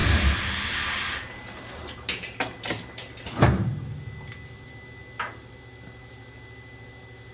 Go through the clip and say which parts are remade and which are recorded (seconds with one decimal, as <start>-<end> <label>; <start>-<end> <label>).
0.0-7.3 recorded